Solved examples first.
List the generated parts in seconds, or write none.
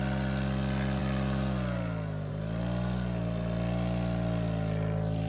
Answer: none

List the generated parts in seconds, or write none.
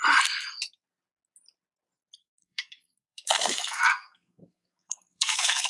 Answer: 2.2-5.7 (codec, SNAC)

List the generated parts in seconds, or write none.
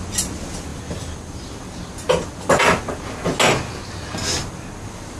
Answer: none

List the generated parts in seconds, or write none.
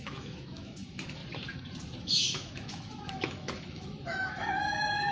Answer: 0.0-1.2 (autoencoder, DAC-VAE); 2.0-5.1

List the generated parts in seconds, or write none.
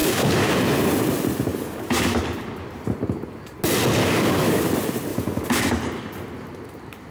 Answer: 0.0-0.6 (codec, DAC); 1.5-2.2; 4.0-4.6; 5.1-5.7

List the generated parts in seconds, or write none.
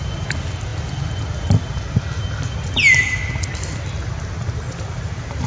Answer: none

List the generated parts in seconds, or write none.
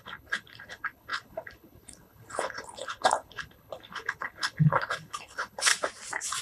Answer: 0.0-5.7 (codec, HILCodec)